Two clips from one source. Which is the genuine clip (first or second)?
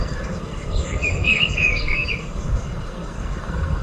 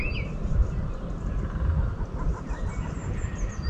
second